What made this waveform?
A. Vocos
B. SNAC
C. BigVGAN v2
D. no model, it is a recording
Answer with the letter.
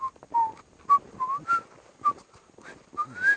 D